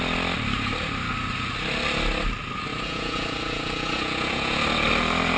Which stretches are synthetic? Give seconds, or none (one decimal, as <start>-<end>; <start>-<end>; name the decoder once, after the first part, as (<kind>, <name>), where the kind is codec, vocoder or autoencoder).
2.7-4.6 (vocoder, Vocos)